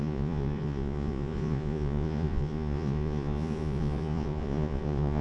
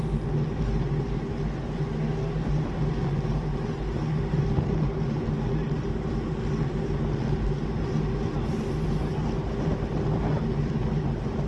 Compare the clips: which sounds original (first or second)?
second